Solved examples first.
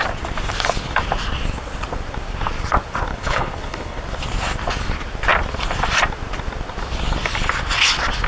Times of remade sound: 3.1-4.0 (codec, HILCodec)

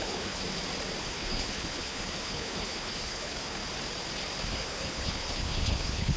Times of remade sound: 0.0-0.4 (codec, HILCodec); 1.0-3.6; 4.5-6.2

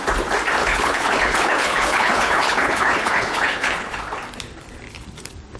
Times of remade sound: 0.6-4.0 (codec, HILCodec)

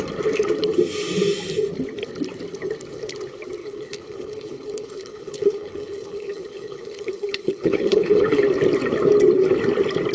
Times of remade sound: 3.6-8.4 (codec, HILCodec)